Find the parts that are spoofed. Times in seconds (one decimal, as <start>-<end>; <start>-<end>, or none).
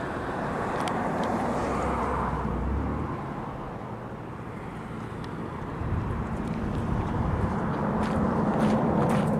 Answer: 0.0-2.9; 5.7-9.4